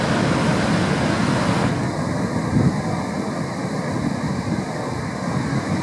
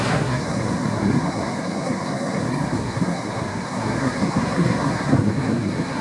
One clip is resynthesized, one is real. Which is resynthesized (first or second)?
second